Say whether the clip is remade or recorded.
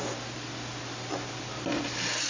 recorded